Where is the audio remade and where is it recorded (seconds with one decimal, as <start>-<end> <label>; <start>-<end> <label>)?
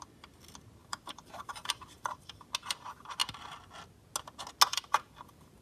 0.0-0.8 recorded; 0.8-2.4 remade; 2.4-4.7 recorded; 4.7-5.6 remade